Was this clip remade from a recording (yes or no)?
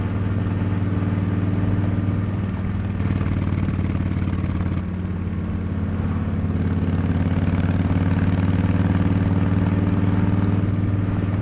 no